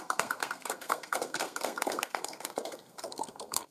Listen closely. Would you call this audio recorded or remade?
remade